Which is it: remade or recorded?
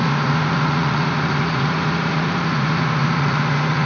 remade